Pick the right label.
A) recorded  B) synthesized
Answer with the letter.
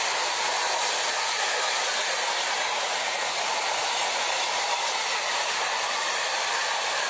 A